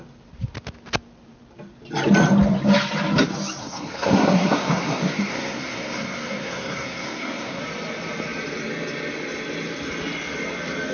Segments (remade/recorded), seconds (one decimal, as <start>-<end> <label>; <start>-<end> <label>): 0.0-3.6 recorded; 3.6-7.6 remade; 7.6-10.9 recorded